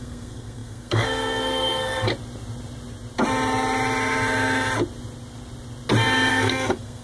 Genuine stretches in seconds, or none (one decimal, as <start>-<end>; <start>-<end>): 2.1-6.3